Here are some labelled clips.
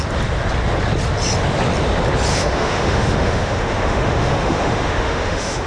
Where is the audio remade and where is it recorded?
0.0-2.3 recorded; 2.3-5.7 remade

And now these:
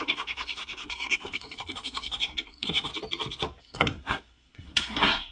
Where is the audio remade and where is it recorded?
0.0-2.9 remade; 2.9-3.6 recorded; 3.6-5.3 remade